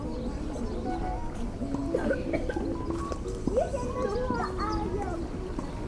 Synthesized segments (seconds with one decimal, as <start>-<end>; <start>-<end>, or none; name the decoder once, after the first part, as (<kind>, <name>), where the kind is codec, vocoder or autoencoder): none